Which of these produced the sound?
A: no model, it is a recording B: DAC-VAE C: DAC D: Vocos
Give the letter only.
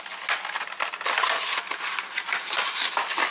A